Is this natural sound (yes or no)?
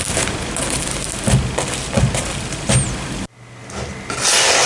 yes